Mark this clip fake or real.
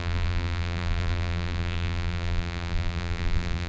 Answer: fake